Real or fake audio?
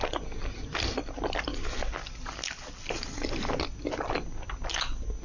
real